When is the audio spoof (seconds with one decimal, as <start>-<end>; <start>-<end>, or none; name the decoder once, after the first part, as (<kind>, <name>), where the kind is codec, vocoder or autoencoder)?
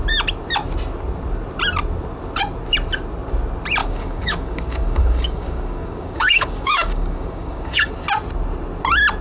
3.8-7.9 (codec, DAC)